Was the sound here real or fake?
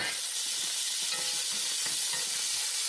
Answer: real